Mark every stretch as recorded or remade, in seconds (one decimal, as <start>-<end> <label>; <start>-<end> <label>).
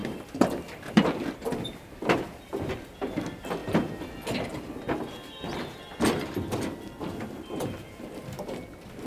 0.0-3.0 remade; 3.0-3.6 recorded; 3.6-8.2 remade; 8.2-9.1 recorded